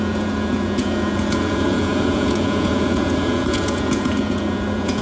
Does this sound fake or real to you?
fake